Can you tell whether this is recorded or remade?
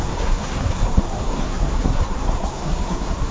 remade